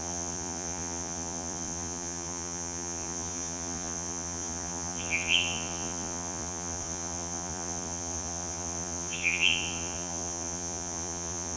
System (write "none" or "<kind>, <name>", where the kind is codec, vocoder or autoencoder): vocoder, Vocos